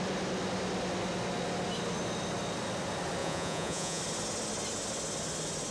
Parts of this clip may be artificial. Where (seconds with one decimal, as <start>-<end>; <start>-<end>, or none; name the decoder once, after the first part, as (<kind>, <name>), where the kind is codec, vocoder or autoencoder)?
3.2-4.0 (vocoder, Vocos)